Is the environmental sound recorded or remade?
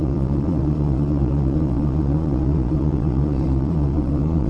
remade